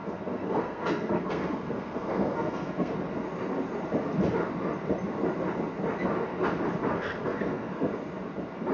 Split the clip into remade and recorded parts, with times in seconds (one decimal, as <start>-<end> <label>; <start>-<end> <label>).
0.0-2.9 remade; 2.9-6.9 recorded; 6.9-7.9 remade; 7.9-8.7 recorded